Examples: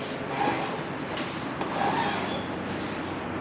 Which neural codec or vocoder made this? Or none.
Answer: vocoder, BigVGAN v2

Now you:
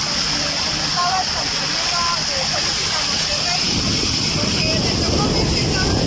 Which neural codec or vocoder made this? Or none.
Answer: none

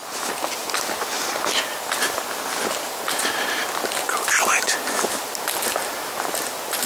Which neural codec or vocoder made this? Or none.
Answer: none